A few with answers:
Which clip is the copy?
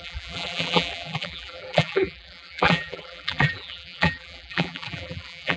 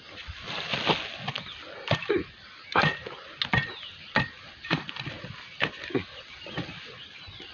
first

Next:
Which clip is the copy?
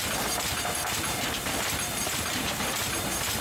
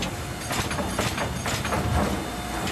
first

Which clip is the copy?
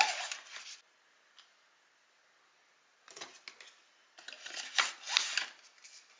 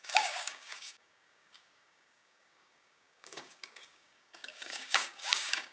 second